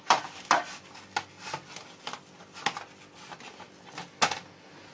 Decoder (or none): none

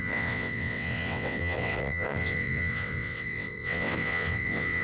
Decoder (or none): vocoder, WaveNeXt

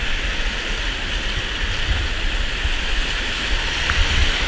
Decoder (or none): none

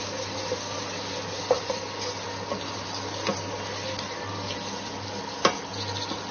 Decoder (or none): none